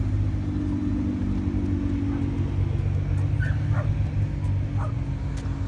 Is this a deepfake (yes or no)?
no